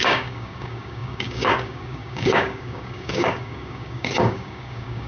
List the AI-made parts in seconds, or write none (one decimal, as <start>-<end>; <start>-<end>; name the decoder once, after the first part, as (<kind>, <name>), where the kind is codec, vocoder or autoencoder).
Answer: 0.0-5.1 (codec, DAC)